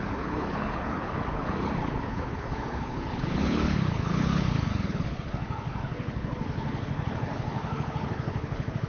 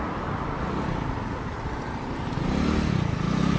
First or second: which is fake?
first